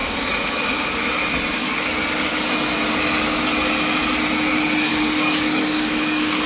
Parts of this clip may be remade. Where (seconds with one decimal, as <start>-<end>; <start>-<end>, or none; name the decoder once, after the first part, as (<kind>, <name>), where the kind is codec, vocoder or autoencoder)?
0.0-0.6 (codec, DAC); 1.6-2.3; 4.9-6.5